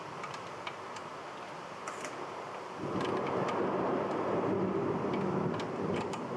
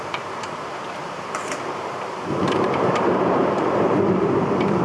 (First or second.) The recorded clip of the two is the first